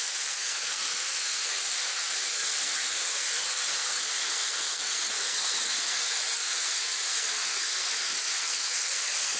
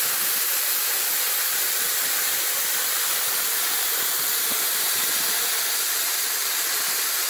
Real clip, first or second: second